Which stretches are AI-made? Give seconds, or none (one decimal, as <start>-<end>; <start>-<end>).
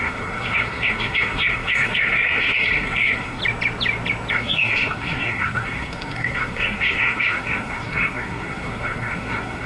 0.0-3.4; 4.3-9.7